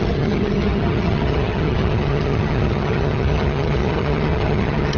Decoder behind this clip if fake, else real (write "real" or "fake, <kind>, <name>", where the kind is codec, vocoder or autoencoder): fake, vocoder, HiFi-GAN